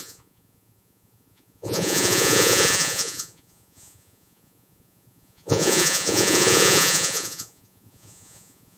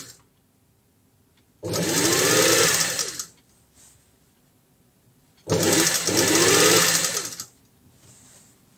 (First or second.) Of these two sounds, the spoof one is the first